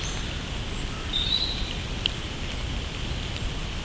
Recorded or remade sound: recorded